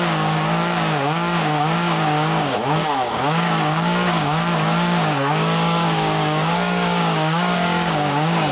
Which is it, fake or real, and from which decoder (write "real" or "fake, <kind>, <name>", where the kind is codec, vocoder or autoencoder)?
fake, codec, DAC